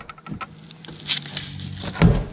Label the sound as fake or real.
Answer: real